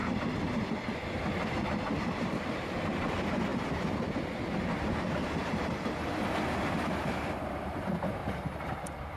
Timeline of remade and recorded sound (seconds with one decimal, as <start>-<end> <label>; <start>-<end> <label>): 0.0-2.3 recorded; 2.3-9.2 remade